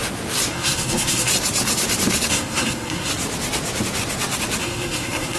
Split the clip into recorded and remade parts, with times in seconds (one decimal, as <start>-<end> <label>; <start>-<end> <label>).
0.0-0.5 recorded; 0.5-1.3 remade; 1.3-2.3 recorded; 2.3-3.1 remade; 3.1-4.6 recorded; 4.6-5.4 remade